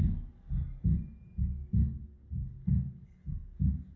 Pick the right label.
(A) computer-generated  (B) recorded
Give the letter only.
B